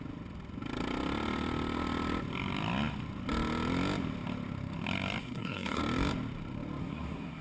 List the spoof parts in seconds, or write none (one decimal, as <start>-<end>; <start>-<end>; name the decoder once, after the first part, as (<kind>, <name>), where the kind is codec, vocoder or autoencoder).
5.2-5.8 (codec, SNAC); 6.8-7.4